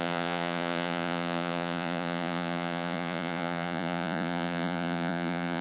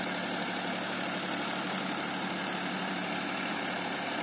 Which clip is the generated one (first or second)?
first